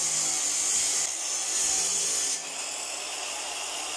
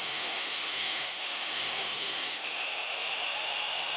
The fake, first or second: second